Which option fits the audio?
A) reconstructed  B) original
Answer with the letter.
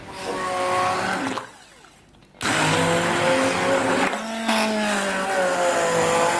B